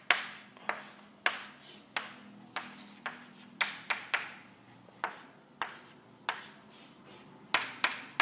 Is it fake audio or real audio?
real